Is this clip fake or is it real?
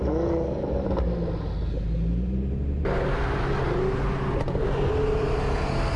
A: real